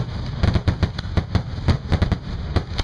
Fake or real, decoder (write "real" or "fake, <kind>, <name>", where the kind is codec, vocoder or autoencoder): real